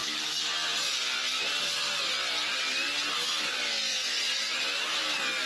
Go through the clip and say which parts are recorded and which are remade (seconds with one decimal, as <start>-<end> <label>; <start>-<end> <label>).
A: 0.0-3.9 recorded; 3.9-4.6 remade; 4.6-5.5 recorded